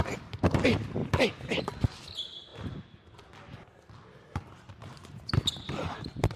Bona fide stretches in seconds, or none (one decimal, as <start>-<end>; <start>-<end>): 0.0-6.4